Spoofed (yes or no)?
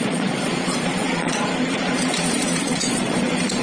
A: yes